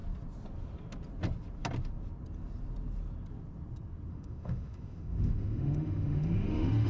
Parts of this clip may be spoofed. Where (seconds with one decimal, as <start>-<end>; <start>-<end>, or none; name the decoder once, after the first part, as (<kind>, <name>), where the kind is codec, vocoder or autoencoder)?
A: 4.1-6.9 (autoencoder, DAC-VAE)